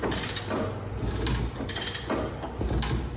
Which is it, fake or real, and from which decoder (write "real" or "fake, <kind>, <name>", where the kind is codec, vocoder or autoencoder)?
real